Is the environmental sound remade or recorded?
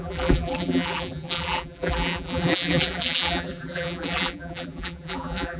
remade